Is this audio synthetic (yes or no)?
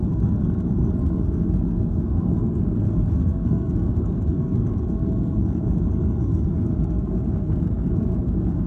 yes